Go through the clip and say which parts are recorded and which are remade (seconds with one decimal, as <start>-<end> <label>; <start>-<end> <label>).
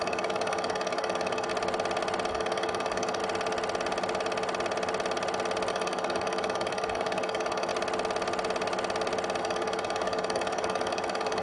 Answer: 0.0-1.5 remade; 1.5-2.3 recorded; 2.3-3.2 remade; 3.2-5.7 recorded; 5.7-7.7 remade; 7.7-9.4 recorded; 9.4-11.4 remade